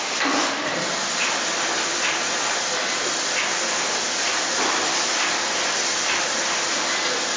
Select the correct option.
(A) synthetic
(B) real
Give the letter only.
B